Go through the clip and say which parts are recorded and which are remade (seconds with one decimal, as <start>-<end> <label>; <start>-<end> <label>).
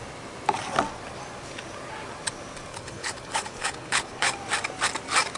0.0-2.7 recorded; 2.7-4.3 remade; 4.3-5.4 recorded